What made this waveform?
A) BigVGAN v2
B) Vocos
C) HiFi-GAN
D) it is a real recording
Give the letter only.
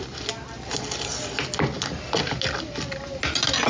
D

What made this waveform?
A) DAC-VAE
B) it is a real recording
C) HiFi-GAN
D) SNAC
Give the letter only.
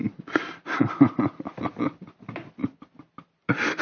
B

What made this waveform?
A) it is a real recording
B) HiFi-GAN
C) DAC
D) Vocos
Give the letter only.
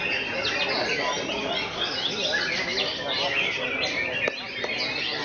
A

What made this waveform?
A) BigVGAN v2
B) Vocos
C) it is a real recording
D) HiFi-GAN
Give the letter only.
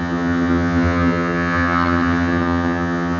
D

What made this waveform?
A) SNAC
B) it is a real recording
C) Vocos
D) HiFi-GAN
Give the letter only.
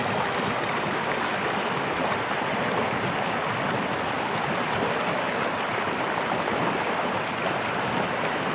B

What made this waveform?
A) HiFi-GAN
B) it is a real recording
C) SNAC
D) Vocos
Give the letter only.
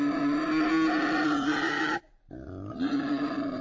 B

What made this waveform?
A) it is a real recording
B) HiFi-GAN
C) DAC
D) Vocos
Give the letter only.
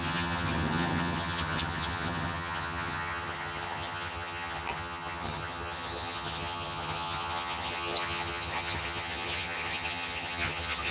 B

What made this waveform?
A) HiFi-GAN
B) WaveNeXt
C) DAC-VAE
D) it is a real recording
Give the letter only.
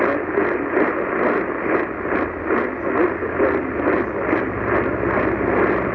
D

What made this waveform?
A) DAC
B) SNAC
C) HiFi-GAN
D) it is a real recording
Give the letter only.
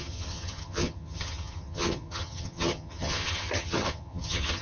C